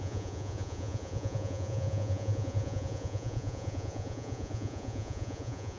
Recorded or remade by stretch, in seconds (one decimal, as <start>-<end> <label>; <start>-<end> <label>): 0.0-5.8 remade